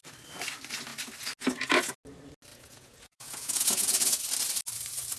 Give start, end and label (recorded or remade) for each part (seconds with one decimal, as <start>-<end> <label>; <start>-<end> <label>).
0.0-2.5 recorded; 2.5-4.2 remade; 4.2-5.2 recorded